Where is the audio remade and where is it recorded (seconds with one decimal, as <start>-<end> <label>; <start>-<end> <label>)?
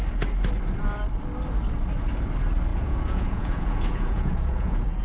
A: 0.0-2.7 recorded; 2.7-5.0 remade